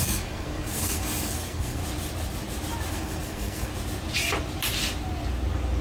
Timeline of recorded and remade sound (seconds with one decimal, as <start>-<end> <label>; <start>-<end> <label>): 0.0-1.8 remade; 1.8-2.9 recorded; 2.9-3.7 remade; 3.7-5.8 recorded

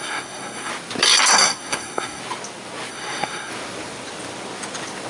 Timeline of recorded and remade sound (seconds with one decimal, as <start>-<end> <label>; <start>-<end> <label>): 0.0-0.7 remade; 0.7-1.3 recorded; 1.3-2.2 remade; 2.2-2.9 recorded; 2.9-3.5 remade; 3.5-5.1 recorded

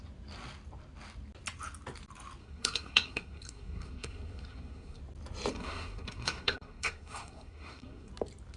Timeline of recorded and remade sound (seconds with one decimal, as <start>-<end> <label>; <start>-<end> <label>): 0.0-2.4 recorded; 2.4-5.0 remade; 5.0-5.5 recorded; 5.5-8.1 remade; 8.1-8.6 recorded

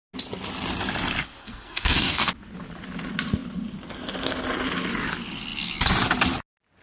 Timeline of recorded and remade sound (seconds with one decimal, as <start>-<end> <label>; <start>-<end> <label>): 0.0-1.4 recorded; 1.4-2.3 remade; 2.3-6.8 recorded